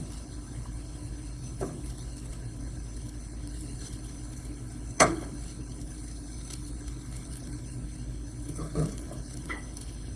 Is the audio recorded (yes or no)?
no